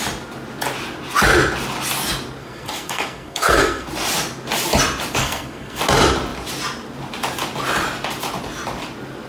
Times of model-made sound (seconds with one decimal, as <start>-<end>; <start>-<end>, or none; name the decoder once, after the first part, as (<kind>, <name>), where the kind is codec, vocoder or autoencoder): 2.4-3.9 (codec, SNAC); 5.2-5.8